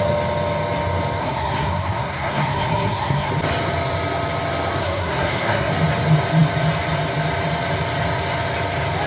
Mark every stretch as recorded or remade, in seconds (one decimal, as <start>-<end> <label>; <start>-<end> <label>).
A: 0.0-1.2 recorded; 1.2-3.3 remade; 3.3-4.8 recorded; 4.8-5.7 remade; 5.7-9.1 recorded

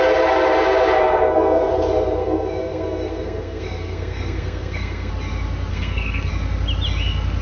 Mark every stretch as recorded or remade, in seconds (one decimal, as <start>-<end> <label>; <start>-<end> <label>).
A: 0.0-1.0 recorded; 1.0-1.7 remade; 1.7-2.2 recorded; 2.2-5.1 remade; 5.1-5.7 recorded; 5.7-6.3 remade; 6.3-7.4 recorded